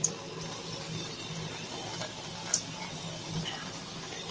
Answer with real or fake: real